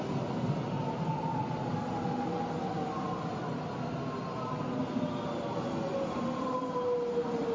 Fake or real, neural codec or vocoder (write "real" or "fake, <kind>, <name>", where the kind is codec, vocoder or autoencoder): real